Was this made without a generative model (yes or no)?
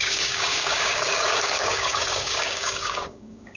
no